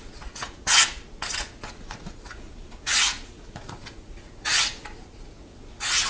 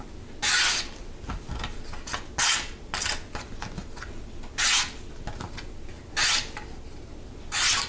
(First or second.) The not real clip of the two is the first